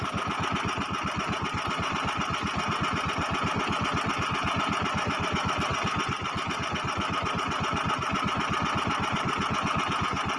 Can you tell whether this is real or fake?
real